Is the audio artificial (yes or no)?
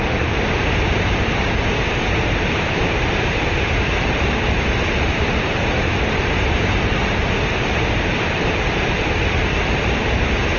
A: yes